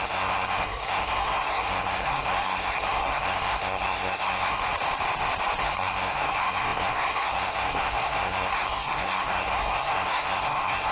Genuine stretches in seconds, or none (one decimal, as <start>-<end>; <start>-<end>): 4.6-5.6

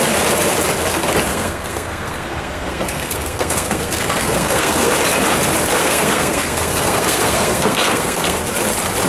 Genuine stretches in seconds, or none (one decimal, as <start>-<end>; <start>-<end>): 0.0-1.3; 4.9-5.8; 8.4-9.1

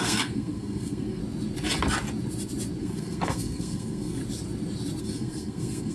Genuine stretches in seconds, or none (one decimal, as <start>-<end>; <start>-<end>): 1.2-2.8; 4.2-5.0

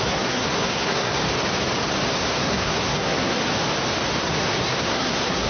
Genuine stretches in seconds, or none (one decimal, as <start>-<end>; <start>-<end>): 1.2-2.1; 3.4-4.2

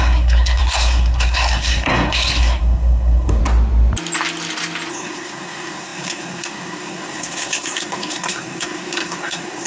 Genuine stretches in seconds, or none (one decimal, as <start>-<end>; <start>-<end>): 3.4-4.9

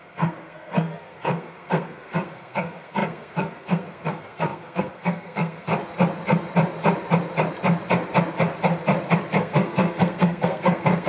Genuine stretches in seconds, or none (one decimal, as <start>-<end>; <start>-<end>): 5.7-9.4

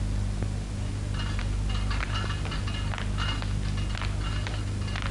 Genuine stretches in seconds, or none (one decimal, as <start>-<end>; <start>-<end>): 0.0-5.1